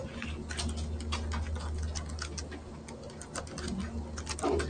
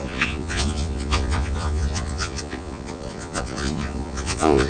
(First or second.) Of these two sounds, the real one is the first